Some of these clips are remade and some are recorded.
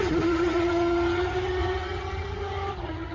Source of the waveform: remade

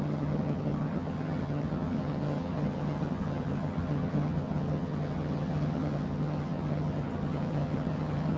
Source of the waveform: remade